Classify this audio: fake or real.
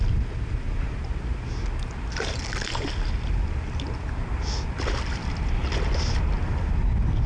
real